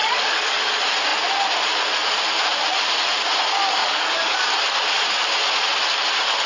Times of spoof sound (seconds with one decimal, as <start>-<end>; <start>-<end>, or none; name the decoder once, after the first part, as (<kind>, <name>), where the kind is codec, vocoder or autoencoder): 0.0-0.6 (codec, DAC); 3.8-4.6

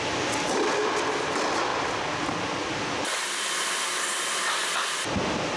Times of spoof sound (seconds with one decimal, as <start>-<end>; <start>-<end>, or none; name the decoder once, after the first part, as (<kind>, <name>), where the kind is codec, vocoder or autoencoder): none

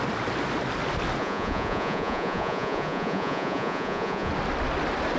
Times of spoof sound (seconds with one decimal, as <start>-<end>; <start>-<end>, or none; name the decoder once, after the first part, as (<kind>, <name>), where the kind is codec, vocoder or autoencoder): 1.2-4.3 (vocoder, Vocos)